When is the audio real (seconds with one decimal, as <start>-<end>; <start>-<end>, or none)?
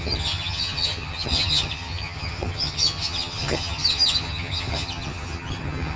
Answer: none